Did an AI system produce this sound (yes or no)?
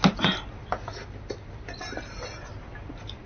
no